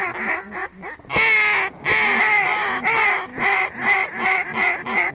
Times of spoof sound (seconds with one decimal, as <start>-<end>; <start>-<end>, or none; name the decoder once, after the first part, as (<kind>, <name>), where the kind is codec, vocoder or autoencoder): 0.6-1.1 (vocoder, BigVGAN v2); 1.9-2.8; 3.3-5.1